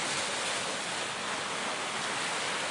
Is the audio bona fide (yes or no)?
yes